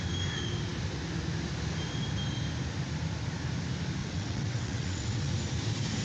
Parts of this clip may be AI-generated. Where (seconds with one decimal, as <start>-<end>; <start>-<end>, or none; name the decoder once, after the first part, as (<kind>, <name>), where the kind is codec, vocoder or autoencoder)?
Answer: 4.0-5.3 (vocoder, WaveNeXt)